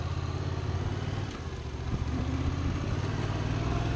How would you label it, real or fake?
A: real